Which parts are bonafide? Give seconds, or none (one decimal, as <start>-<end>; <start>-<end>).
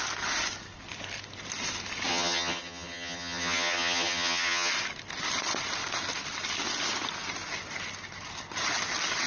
0.0-2.1; 4.7-9.3